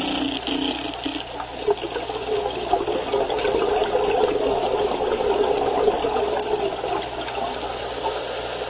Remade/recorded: recorded